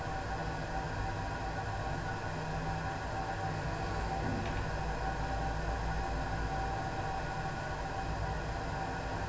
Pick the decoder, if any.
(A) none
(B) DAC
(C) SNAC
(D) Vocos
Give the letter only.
A